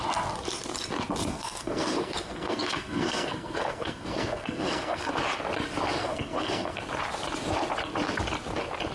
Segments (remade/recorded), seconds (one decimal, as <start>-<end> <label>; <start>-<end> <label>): 0.0-1.2 recorded; 1.2-5.1 remade; 5.1-6.0 recorded; 6.0-6.8 remade; 6.8-8.9 recorded